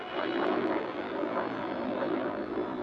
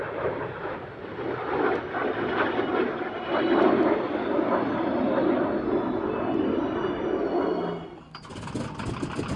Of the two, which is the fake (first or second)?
first